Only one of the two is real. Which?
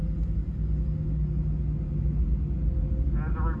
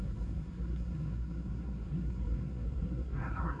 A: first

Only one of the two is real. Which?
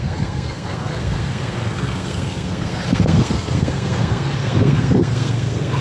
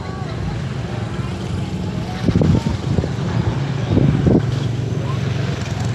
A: second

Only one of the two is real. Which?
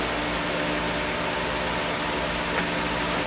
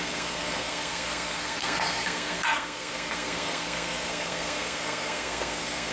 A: first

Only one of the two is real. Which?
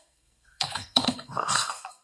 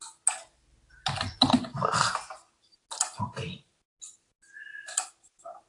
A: second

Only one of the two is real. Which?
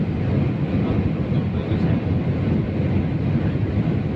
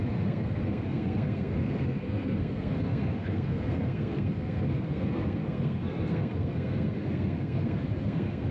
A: first